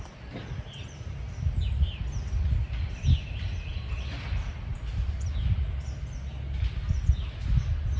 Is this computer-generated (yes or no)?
no